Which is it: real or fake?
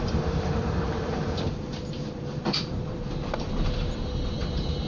fake